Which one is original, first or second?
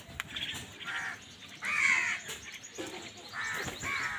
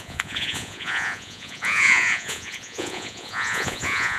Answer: first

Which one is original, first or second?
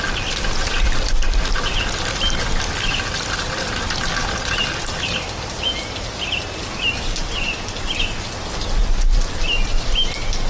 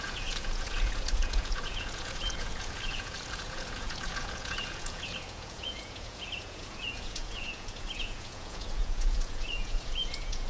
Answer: first